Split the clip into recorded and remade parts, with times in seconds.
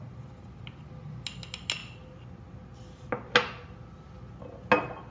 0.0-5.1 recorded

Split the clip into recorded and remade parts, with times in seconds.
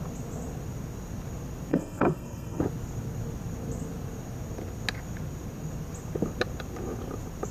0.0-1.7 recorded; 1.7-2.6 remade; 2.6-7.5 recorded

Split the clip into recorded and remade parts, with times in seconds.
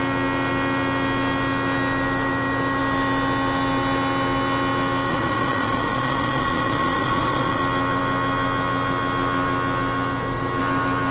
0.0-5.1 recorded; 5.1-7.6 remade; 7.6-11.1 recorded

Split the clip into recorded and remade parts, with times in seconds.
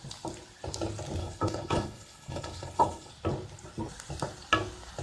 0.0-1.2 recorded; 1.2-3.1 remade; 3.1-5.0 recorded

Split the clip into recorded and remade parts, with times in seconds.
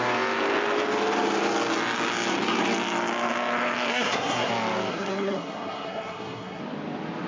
0.0-3.9 recorded; 3.9-4.5 remade; 4.5-4.9 recorded; 4.9-6.6 remade; 6.6-7.3 recorded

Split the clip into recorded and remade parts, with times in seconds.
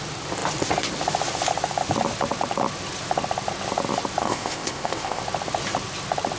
0.0-4.2 recorded; 4.2-5.2 remade; 5.2-6.4 recorded